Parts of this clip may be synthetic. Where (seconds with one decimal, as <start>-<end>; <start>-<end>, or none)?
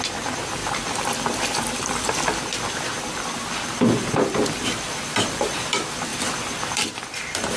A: none